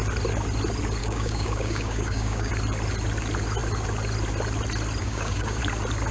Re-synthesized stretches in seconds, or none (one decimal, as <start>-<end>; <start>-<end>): 1.0-2.5; 5.0-5.6